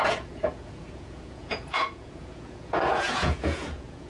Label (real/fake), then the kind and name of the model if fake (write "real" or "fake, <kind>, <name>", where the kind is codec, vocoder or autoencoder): fake, vocoder, Vocos